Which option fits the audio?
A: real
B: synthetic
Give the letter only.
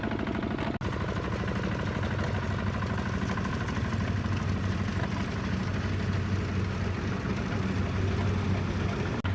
A